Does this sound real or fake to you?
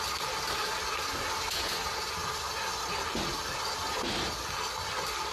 real